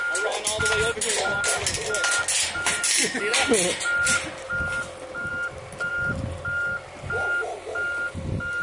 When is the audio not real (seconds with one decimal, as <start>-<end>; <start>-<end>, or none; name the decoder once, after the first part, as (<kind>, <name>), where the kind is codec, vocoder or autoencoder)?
none